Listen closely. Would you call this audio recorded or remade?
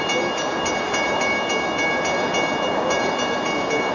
recorded